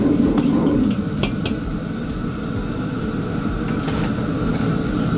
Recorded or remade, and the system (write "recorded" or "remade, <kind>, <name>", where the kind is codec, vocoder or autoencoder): recorded